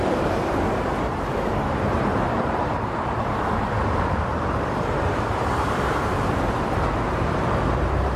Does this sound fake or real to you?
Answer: fake